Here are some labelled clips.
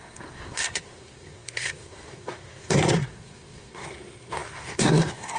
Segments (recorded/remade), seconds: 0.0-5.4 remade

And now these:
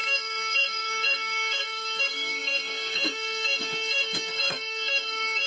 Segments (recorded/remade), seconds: 0.0-5.5 remade

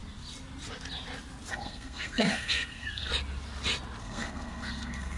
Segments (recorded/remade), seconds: 0.0-1.5 recorded; 1.5-3.1 remade; 3.1-4.0 recorded; 4.0-5.2 remade